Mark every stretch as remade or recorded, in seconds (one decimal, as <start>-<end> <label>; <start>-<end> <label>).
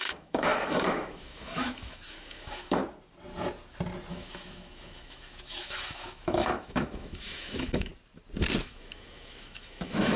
0.0-2.8 remade; 2.8-4.1 recorded; 4.1-7.9 remade; 7.9-8.6 recorded; 8.6-10.2 remade